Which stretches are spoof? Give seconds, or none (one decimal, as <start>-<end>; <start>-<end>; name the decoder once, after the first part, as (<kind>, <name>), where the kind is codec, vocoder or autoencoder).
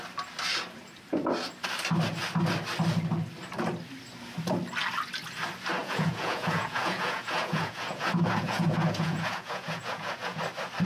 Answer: 5.8-10.4 (vocoder, Vocos)